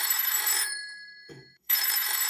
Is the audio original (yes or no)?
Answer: no